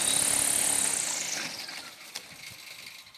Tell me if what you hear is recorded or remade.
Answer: recorded